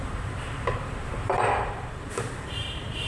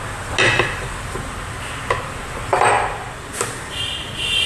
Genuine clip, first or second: second